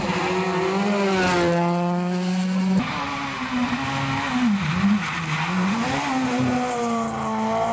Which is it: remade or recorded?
recorded